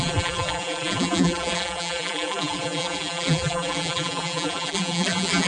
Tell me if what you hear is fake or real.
fake